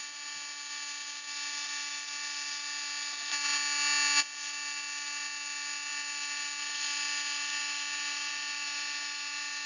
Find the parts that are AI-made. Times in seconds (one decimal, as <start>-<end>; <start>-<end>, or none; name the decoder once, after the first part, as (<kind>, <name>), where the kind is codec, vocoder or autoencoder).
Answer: none